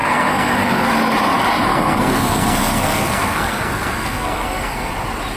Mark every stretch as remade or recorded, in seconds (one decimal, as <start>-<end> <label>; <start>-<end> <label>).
0.0-0.9 remade; 0.9-1.7 recorded; 1.7-4.9 remade; 4.9-5.4 recorded